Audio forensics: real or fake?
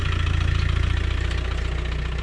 real